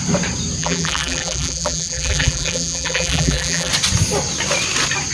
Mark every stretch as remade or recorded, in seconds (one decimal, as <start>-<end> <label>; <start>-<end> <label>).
0.0-0.6 recorded; 0.6-3.7 remade; 3.7-5.1 recorded